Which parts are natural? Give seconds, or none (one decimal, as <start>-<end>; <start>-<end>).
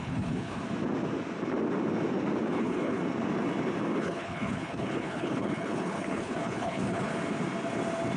0.6-2.6; 3.0-4.0; 7.1-8.2